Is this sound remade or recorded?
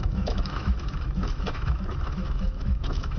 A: remade